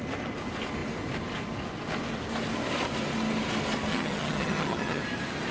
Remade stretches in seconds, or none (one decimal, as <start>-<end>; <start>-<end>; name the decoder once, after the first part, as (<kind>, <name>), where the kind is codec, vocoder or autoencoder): 3.9-5.0 (vocoder, HiFi-GAN)